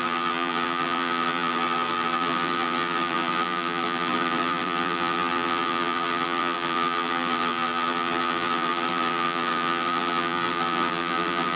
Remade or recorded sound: remade